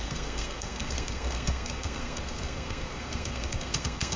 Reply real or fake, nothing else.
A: fake